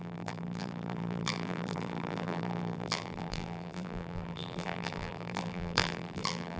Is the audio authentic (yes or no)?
no